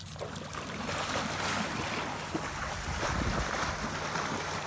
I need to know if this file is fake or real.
real